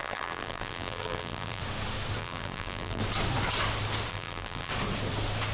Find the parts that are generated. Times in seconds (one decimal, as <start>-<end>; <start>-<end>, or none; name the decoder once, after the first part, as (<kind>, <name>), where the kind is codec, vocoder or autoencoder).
0.0-1.6 (vocoder, BigVGAN v2); 2.2-3.0; 4.1-4.7